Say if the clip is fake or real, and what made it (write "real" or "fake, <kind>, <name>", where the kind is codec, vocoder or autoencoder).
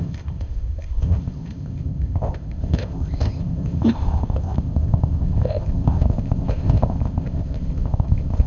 fake, codec, ZipCodec